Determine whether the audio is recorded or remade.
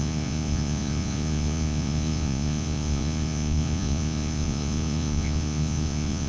remade